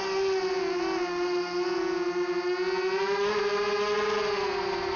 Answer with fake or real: real